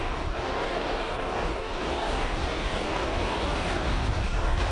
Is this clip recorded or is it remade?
remade